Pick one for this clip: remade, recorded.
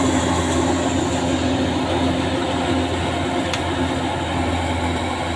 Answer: recorded